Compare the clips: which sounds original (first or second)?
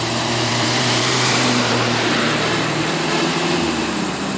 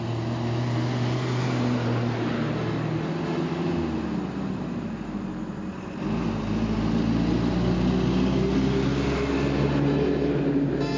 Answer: second